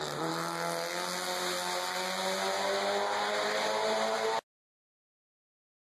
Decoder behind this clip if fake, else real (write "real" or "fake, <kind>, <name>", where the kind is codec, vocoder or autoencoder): real